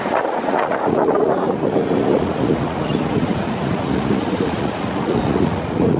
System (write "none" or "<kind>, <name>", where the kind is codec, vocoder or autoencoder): vocoder, Vocos